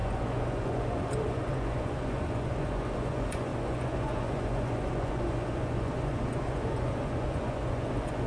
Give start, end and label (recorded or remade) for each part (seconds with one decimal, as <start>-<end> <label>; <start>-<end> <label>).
0.0-8.3 remade